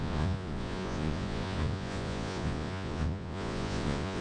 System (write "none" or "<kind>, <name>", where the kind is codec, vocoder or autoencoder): vocoder, Vocos